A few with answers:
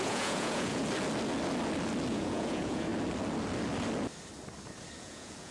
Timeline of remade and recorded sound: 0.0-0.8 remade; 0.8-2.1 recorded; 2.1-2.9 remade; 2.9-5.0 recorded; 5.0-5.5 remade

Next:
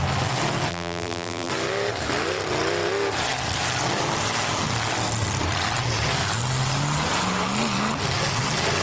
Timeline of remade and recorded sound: 0.0-0.7 recorded; 0.7-1.5 remade; 1.5-8.8 recorded

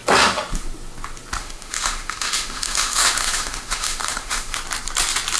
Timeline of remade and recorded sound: 0.0-1.4 recorded; 1.4-4.6 remade; 4.6-5.4 recorded